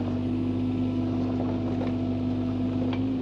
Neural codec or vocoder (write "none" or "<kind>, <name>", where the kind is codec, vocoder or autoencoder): none